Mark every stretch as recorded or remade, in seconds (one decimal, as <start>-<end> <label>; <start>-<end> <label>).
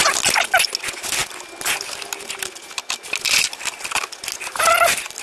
0.0-5.2 recorded